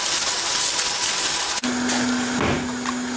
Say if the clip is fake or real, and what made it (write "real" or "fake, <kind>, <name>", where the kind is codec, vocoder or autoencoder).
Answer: real